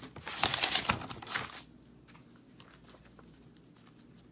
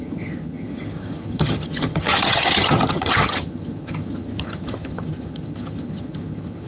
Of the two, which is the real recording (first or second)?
first